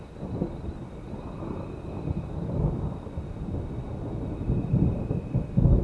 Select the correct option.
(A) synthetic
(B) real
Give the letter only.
B